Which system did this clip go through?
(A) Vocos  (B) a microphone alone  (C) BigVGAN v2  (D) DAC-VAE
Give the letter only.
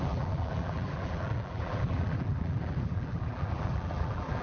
C